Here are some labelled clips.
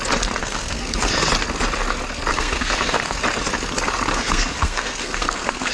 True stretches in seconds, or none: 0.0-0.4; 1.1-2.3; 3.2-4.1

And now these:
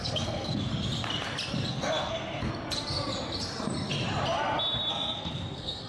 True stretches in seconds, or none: 0.7-1.7; 2.5-4.9

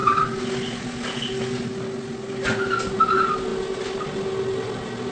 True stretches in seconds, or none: 0.0-5.1

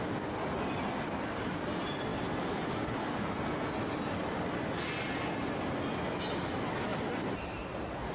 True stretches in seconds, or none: 0.0-8.1

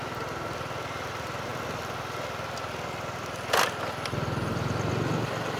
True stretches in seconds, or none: 0.0-5.6